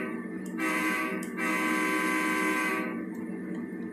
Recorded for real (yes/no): yes